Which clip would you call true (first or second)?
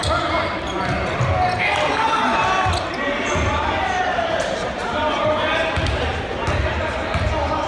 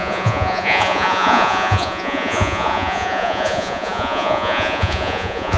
first